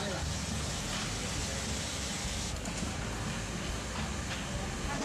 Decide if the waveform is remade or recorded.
recorded